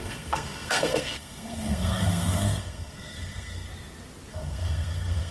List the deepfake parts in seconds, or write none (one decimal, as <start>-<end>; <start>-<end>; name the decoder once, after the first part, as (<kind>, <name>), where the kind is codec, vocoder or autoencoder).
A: 0.0-3.7 (codec, SNAC); 4.3-5.3